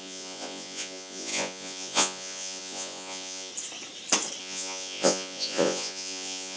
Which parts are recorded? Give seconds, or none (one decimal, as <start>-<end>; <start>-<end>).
3.5-4.4